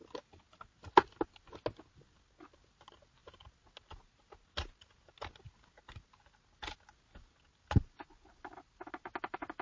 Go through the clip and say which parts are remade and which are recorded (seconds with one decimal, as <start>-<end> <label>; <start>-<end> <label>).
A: 0.0-9.6 recorded